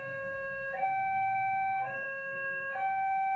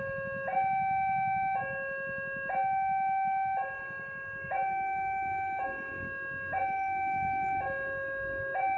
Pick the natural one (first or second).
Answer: second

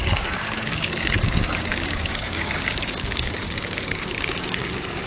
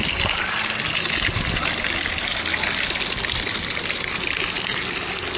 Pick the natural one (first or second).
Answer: second